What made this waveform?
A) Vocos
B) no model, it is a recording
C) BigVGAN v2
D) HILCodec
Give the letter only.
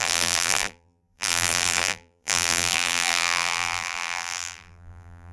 C